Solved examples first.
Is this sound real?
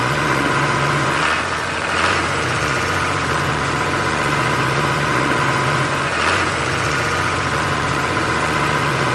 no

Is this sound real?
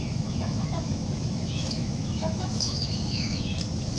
no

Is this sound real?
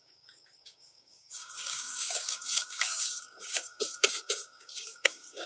no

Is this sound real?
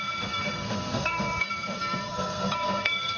no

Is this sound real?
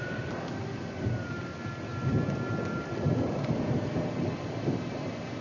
yes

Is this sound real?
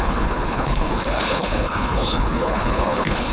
no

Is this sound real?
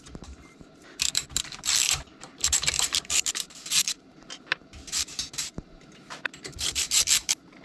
no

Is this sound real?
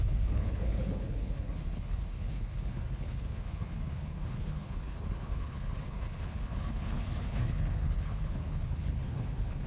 no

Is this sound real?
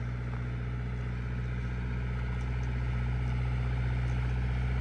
yes